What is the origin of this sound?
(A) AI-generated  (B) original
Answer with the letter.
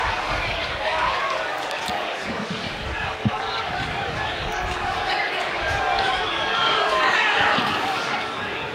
A